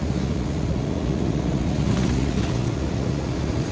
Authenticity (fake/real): fake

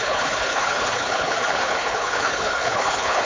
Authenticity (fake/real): fake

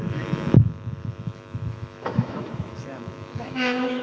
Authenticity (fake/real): fake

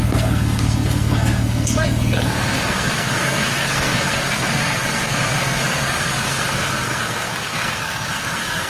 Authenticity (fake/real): fake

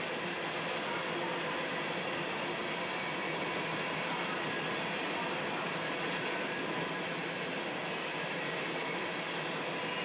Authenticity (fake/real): real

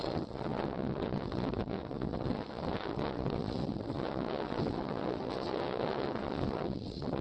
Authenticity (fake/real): fake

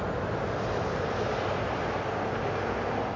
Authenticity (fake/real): real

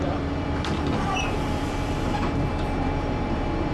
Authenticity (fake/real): fake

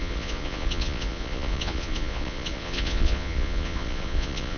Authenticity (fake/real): fake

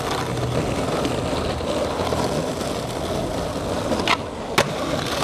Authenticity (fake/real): real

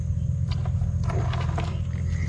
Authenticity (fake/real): real